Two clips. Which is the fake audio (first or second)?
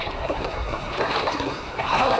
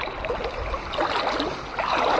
first